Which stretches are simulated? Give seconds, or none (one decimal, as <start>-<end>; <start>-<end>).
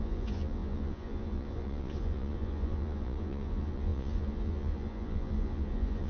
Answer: 0.0-6.1